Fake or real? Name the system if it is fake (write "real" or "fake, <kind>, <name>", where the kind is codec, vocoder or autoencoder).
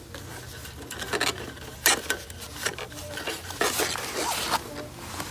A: real